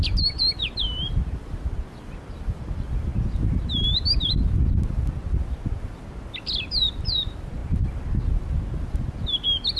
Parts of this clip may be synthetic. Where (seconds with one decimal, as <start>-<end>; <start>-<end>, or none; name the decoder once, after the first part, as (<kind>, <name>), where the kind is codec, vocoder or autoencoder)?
0.0-3.1 (vocoder, BigVGAN v2); 6.7-7.6; 8.8-9.8